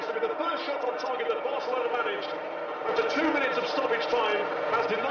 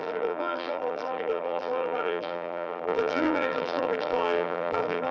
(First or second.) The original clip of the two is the first